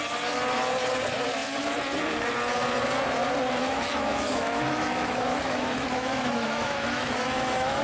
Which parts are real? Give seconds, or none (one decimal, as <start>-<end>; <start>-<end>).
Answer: 0.0-3.6